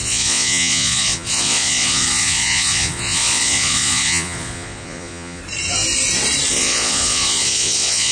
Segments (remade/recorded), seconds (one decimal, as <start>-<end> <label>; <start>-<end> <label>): 0.0-5.4 remade; 5.4-6.5 recorded; 6.5-8.1 remade